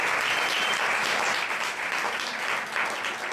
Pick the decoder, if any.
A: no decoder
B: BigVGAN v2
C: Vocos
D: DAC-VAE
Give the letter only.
A